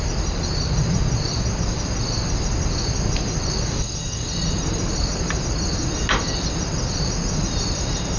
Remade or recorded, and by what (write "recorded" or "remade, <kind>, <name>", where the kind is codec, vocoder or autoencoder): recorded